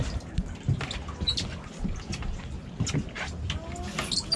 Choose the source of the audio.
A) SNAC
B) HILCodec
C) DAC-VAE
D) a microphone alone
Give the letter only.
D